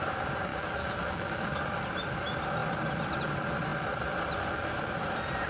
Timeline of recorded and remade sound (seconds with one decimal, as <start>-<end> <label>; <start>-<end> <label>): 0.0-0.5 recorded; 0.5-1.6 remade; 1.6-5.5 recorded